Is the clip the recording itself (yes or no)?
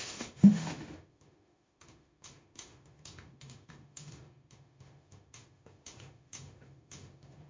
no